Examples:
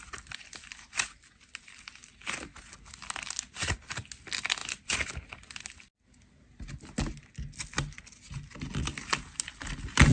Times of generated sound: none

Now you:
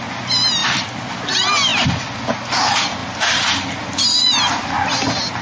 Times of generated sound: 0.6-1.2 (vocoder, BigVGAN v2); 1.7-2.2; 3.0-4.7